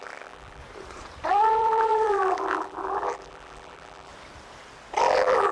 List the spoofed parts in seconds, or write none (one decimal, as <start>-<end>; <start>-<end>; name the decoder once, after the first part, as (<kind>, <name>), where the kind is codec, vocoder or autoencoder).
0.0-0.6 (vocoder, BigVGAN v2); 1.3-4.1; 5.0-5.5